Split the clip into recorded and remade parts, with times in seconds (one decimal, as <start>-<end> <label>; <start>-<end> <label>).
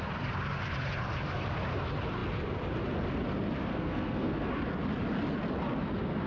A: 0.0-3.7 recorded; 3.7-4.5 remade; 4.5-6.3 recorded